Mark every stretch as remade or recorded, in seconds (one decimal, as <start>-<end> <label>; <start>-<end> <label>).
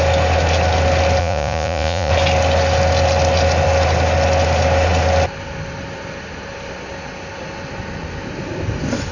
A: 0.0-1.2 recorded; 1.2-2.1 remade; 2.1-9.1 recorded